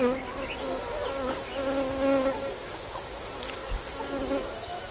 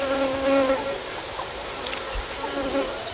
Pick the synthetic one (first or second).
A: second